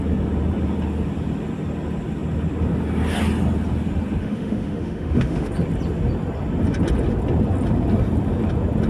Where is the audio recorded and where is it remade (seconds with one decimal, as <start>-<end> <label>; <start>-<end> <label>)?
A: 0.0-4.2 recorded; 4.2-5.5 remade; 5.5-8.9 recorded